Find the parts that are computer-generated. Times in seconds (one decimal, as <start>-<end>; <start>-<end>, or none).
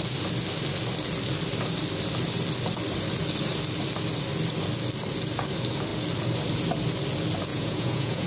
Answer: 7.5-8.3